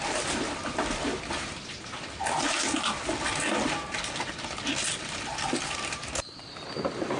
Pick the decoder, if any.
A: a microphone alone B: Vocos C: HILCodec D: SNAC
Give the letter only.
A